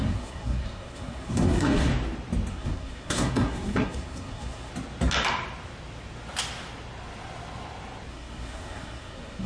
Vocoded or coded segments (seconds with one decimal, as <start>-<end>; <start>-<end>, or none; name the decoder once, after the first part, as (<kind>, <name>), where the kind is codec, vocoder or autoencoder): 0.0-1.9 (codec, SNAC); 2.5-4.7; 8.1-9.5